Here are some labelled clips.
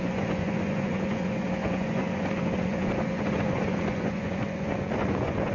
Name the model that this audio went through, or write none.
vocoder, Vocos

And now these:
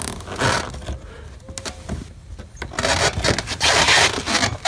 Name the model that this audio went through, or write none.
none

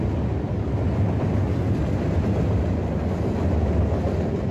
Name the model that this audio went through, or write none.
none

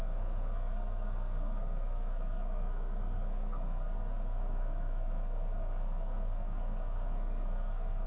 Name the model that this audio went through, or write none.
codec, SNAC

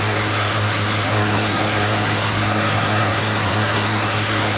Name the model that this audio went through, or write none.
codec, SNAC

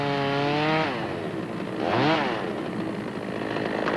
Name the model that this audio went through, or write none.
none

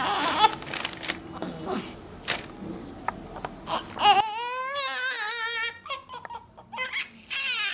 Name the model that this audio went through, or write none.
none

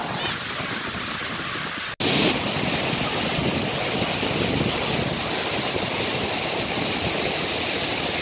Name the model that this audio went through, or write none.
none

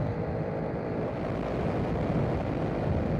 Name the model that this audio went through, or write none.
none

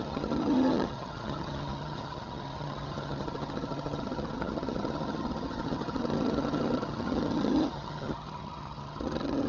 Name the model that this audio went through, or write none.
vocoder, HiFi-GAN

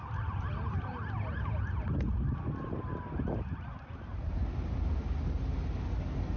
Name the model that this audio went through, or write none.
none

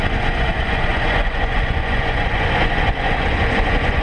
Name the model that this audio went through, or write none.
vocoder, Vocos